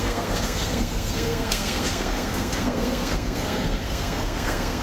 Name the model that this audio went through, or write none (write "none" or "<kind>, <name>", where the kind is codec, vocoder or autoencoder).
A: codec, SNAC